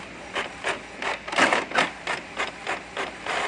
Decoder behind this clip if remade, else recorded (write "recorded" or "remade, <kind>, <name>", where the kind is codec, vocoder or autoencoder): recorded